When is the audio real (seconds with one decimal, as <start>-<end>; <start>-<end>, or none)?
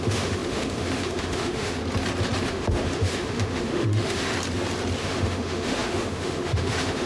1.8-2.4; 4.3-5.0